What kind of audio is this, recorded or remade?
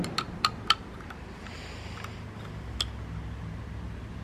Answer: recorded